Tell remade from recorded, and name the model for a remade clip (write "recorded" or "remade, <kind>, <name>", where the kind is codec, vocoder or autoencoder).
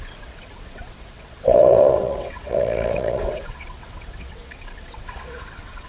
remade, vocoder, WaveNeXt